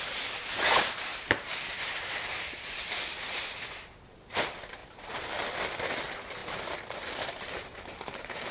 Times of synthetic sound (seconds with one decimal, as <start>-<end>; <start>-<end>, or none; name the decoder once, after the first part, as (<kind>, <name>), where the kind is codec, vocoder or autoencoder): 1.1-2.2 (vocoder, BigVGAN v2); 4.8-5.5; 6.4-8.5